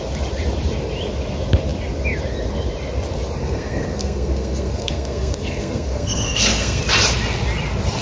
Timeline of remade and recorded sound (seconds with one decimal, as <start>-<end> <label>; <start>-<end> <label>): 0.0-3.4 recorded; 3.4-6.8 remade; 6.8-8.0 recorded